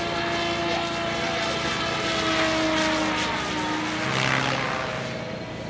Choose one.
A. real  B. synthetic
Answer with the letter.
A